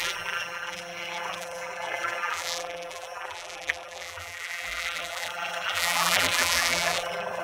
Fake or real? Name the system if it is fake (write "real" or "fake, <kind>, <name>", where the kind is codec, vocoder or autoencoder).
fake, vocoder, BigVGAN v2